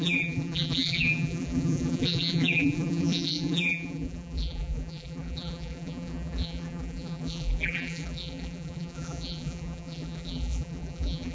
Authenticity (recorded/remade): remade